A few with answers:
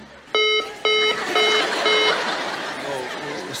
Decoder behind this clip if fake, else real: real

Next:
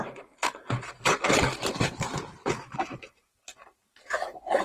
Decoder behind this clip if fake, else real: fake, vocoder, BigVGAN v2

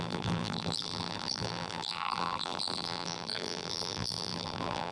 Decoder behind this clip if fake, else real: fake, vocoder, BigVGAN v2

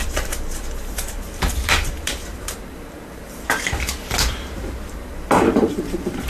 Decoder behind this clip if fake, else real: fake, vocoder, BigVGAN v2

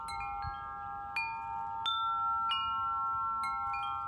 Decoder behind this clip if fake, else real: real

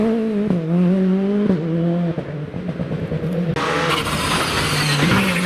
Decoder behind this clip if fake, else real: real